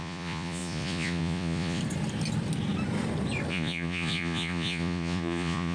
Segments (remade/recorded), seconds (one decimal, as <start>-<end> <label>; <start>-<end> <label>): 0.0-1.8 remade; 1.8-3.5 recorded; 3.5-5.7 remade